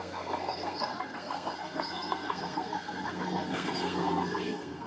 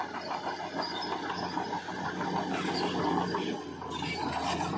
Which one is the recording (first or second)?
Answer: second